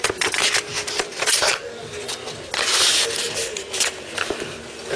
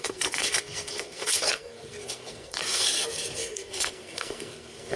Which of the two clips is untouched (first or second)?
first